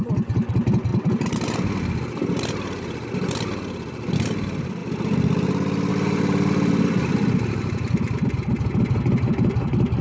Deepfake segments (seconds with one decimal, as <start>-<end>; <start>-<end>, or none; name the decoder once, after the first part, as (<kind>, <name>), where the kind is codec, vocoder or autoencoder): none